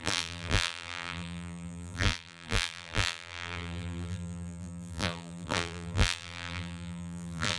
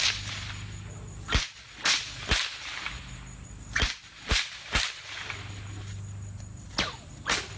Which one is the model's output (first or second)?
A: first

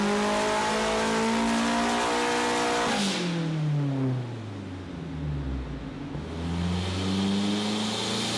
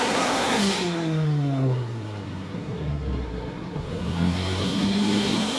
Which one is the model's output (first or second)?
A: second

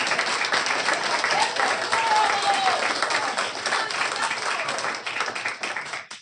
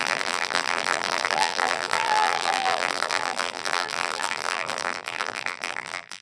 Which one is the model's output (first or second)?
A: second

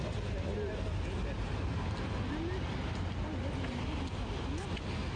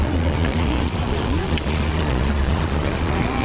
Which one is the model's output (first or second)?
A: second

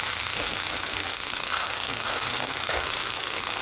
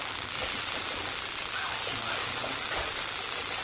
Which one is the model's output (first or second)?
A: first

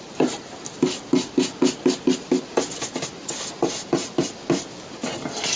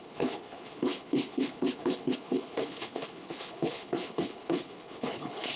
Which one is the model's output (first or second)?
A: second